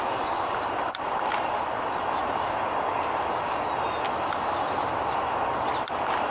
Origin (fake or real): real